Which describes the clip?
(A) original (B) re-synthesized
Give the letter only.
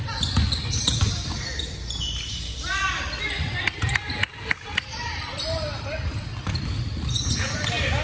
B